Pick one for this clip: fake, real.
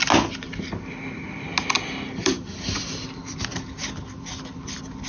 real